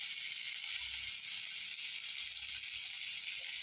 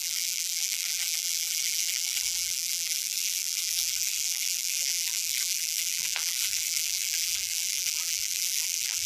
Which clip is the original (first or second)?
first